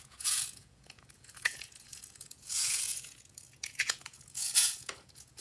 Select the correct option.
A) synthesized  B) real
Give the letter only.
A